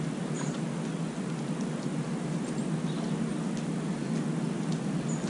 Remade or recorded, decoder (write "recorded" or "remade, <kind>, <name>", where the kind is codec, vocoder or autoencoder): recorded